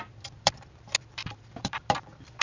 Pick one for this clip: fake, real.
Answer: fake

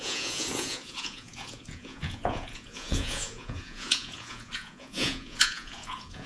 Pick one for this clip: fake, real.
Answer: fake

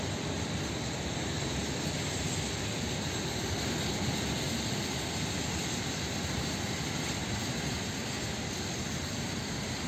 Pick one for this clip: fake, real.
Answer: fake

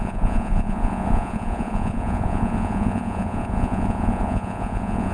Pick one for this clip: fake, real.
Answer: fake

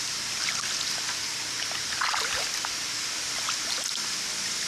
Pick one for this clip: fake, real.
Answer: real